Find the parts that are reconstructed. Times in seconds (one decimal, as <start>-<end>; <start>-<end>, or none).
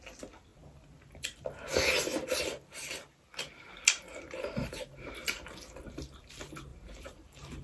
4.1-5.8; 6.7-7.6